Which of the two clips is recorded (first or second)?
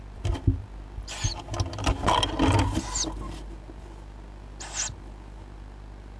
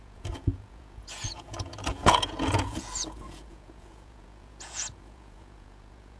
first